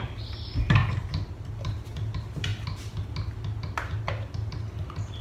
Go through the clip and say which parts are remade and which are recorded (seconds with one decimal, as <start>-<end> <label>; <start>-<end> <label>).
0.0-5.2 recorded